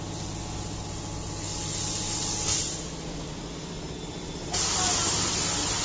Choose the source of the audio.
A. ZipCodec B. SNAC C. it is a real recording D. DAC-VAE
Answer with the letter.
C